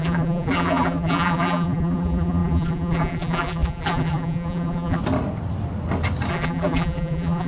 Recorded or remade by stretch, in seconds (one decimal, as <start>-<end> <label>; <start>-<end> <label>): 0.0-5.0 remade; 5.0-6.3 recorded; 6.3-7.5 remade